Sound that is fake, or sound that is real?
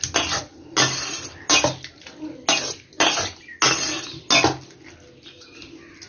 real